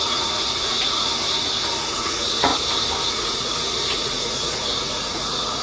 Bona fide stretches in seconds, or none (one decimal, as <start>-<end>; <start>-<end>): 1.1-1.8; 2.5-3.1